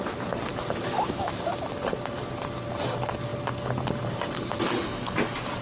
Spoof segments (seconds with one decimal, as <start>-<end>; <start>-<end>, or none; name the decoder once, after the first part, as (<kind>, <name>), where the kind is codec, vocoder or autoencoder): 0.5-1.5 (autoencoder, DAC-VAE)